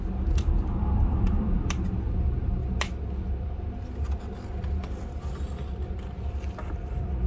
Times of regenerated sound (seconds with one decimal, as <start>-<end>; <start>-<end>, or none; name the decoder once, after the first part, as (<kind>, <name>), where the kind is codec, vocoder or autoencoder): none